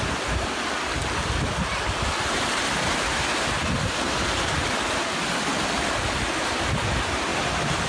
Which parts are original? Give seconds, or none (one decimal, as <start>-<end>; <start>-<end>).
0.0-7.3